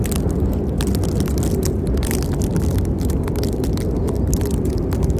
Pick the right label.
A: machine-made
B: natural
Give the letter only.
B